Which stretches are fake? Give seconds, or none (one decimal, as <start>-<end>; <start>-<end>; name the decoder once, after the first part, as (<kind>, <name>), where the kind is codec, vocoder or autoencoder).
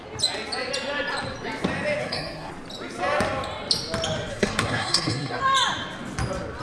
2.0-2.5 (codec, SNAC); 4.3-5.4